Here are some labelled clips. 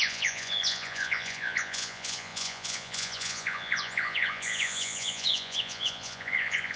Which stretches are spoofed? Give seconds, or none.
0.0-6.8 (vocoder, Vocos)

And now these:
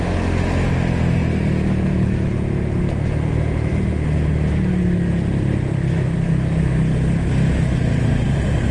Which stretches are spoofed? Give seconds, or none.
none

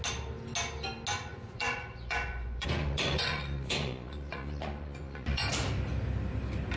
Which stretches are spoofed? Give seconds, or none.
1.3-5.4 (vocoder, Vocos)

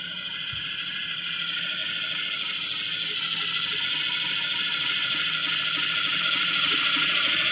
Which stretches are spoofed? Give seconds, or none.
0.0-1.8 (vocoder, Vocos); 3.8-5.4; 6.2-7.5

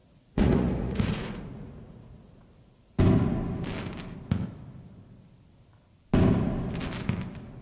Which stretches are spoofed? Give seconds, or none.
0.0-3.0 (vocoder, Vocos)

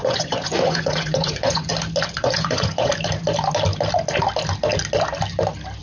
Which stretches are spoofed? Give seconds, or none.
0.0-1.7 (vocoder, Vocos); 2.2-2.9